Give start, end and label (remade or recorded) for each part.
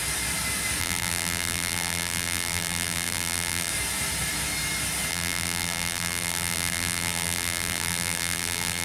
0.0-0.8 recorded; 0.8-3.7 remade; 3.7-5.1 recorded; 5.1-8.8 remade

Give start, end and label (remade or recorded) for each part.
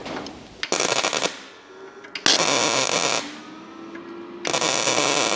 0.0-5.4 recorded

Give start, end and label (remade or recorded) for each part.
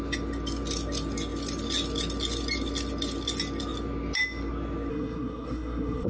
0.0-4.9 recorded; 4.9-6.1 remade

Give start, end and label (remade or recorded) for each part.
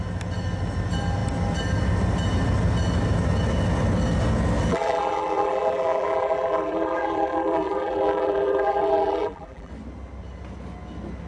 0.0-4.7 recorded; 4.7-9.7 remade; 9.7-11.3 recorded